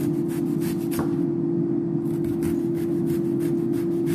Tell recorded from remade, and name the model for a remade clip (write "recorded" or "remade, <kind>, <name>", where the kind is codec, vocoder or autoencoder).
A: recorded